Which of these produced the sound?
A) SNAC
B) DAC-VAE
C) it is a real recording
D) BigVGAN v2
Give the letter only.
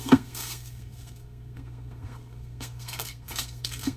A